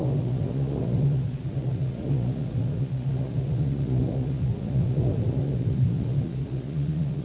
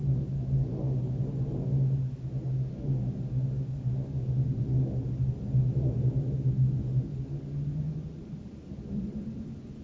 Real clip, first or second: second